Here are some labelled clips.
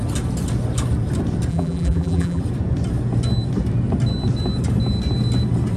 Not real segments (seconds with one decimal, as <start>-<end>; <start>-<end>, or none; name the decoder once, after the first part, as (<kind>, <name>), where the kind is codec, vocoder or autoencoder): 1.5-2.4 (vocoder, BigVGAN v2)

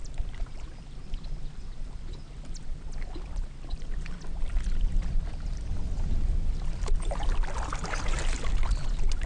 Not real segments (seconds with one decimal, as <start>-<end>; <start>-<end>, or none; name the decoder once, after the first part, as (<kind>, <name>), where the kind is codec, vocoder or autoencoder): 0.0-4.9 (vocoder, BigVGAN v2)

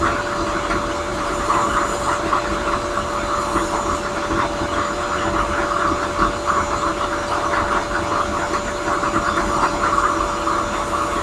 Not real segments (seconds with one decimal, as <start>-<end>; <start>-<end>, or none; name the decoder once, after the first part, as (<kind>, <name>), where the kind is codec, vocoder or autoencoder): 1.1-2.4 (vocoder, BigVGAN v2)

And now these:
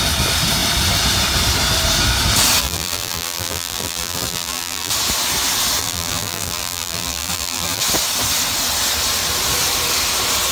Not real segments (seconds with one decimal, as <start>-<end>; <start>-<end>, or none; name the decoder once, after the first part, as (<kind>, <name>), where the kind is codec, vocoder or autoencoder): 2.6-4.9 (vocoder, BigVGAN v2); 5.8-7.8

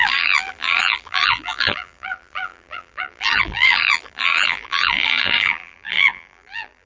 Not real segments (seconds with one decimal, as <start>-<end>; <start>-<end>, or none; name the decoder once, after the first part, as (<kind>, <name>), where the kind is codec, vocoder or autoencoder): 0.0-6.9 (vocoder, BigVGAN v2)

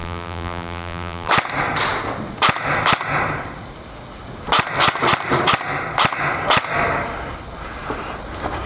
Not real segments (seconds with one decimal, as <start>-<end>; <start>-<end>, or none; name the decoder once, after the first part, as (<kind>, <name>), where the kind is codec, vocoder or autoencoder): 0.0-1.3 (vocoder, BigVGAN v2)

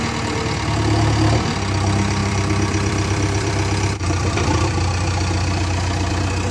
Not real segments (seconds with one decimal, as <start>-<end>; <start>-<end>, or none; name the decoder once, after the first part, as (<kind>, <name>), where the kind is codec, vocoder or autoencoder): 2.2-6.1 (vocoder, BigVGAN v2)

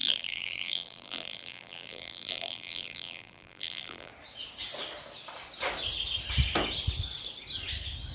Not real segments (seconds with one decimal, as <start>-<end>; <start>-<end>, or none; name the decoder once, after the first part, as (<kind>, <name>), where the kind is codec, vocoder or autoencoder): 0.0-4.1 (vocoder, BigVGAN v2)